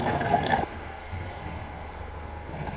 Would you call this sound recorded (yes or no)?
no